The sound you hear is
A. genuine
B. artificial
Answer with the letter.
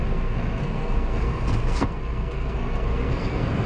B